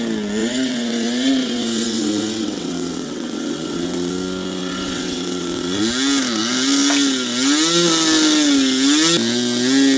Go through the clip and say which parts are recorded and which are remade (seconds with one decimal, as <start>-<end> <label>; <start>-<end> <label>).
0.0-0.4 recorded; 0.4-4.1 remade; 4.1-4.6 recorded; 4.6-5.8 remade; 5.8-10.0 recorded